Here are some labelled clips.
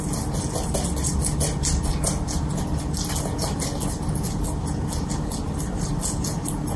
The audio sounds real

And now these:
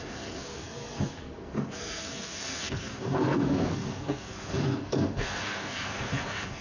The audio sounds fake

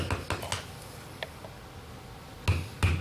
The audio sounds real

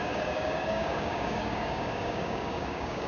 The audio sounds fake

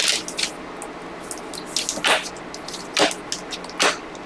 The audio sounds real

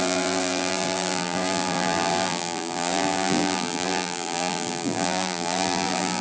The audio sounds fake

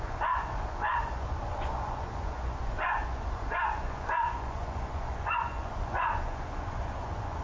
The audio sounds fake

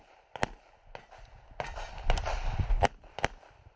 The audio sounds real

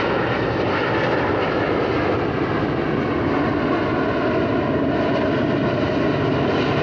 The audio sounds real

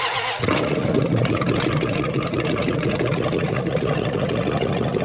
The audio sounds fake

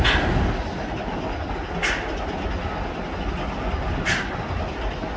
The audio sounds real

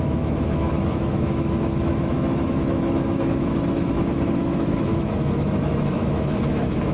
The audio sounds fake